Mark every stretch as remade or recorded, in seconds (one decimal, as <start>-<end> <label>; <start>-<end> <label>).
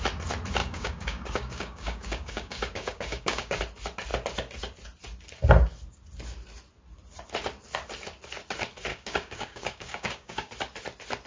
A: 0.0-0.6 recorded; 0.6-3.6 remade; 3.6-8.9 recorded; 8.9-10.5 remade; 10.5-11.3 recorded